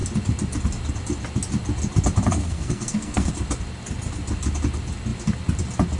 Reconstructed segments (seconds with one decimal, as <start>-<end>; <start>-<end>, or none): 2.4-3.3